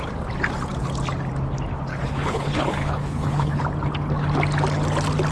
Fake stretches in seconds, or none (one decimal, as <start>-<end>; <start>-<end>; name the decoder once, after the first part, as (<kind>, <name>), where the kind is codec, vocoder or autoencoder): 1.9-3.6 (codec, HILCodec)